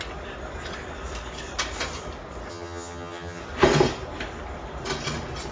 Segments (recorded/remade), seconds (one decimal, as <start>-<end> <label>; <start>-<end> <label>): 0.0-2.5 recorded; 2.5-3.4 remade; 3.4-5.5 recorded